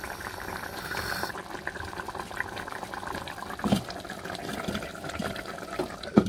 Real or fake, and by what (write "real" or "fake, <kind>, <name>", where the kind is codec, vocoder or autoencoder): fake, vocoder, BigVGAN v2